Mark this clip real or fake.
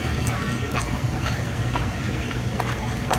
fake